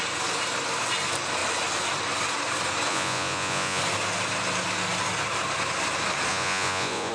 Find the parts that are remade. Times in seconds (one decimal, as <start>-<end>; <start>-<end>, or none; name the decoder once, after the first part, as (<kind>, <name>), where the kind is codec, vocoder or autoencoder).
2.9-3.8 (vocoder, Vocos); 6.3-7.1